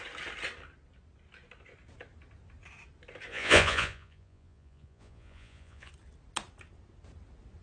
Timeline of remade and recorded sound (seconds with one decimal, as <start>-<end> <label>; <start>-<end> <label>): 0.0-3.3 recorded; 3.3-5.9 remade; 5.9-7.6 recorded